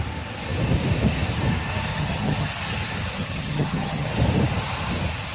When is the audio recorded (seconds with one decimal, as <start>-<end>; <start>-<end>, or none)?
0.0-1.9; 2.6-3.2; 4.1-5.3